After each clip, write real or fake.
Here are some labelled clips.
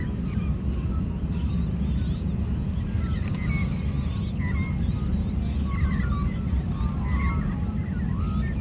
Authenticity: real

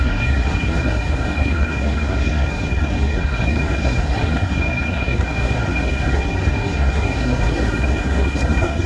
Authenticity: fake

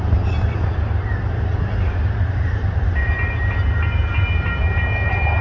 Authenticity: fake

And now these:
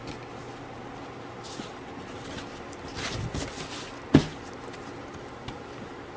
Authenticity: real